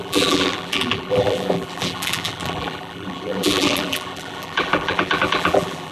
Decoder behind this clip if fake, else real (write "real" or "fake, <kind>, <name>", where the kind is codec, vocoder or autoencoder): fake, vocoder, BigVGAN v2